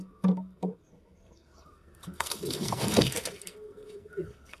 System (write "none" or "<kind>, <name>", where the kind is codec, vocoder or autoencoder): codec, SNAC